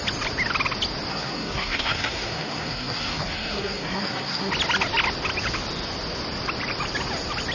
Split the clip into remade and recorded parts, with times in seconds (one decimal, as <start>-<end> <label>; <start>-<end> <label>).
0.0-1.1 recorded; 1.1-4.5 remade; 4.5-7.5 recorded